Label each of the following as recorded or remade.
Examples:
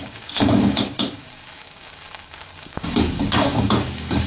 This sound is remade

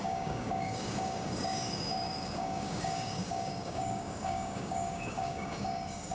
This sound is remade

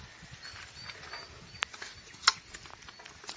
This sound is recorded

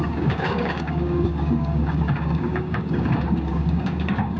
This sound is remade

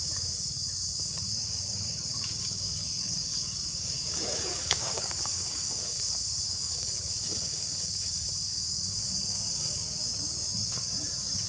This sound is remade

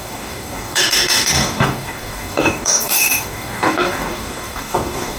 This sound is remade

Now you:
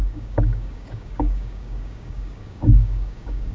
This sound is remade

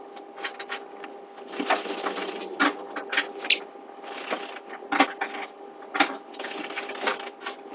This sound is recorded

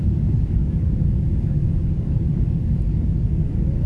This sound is remade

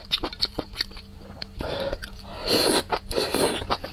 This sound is recorded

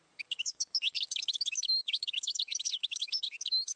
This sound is remade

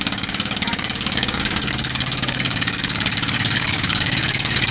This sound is remade